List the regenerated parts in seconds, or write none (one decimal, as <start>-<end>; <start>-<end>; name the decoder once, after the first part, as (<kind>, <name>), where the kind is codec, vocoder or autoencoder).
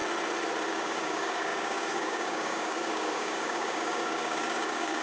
0.7-5.0 (codec, DAC)